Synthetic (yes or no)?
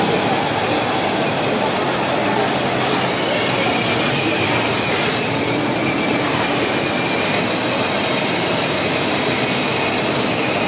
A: no